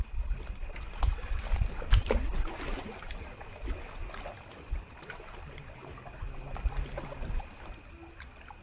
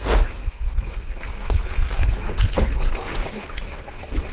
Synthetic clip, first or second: second